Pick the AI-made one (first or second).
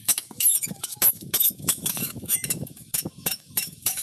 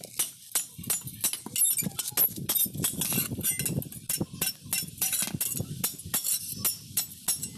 first